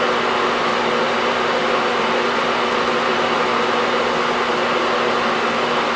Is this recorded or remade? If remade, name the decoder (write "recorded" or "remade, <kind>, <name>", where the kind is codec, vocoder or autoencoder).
recorded